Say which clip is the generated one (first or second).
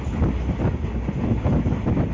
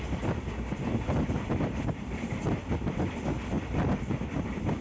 second